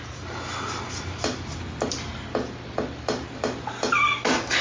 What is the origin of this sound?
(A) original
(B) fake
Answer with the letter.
A